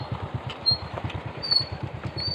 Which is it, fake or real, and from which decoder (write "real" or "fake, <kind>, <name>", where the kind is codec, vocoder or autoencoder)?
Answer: fake, vocoder, BigVGAN v2